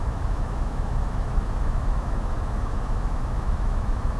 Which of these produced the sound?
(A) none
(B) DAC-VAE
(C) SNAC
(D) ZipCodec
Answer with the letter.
B